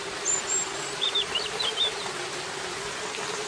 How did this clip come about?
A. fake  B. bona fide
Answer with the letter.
B